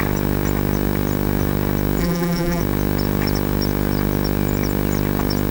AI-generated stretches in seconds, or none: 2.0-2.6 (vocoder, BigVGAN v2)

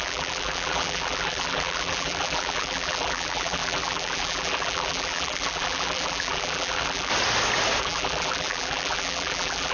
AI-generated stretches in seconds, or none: 0.0-7.1 (vocoder, BigVGAN v2); 7.8-9.7